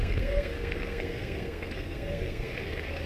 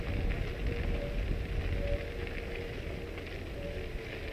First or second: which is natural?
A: second